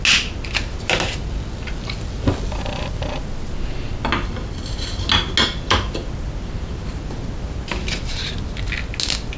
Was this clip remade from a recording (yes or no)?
no